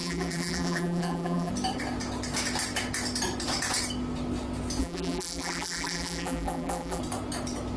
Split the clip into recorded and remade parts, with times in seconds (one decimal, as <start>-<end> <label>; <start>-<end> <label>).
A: 0.0-1.5 remade; 1.5-4.8 recorded; 4.8-7.0 remade; 7.0-7.8 recorded